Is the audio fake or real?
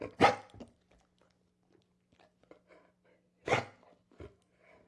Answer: real